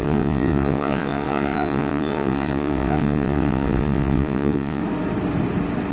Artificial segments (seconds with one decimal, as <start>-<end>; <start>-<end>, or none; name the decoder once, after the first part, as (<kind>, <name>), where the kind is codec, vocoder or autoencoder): 0.0-4.8 (vocoder, WaveNeXt)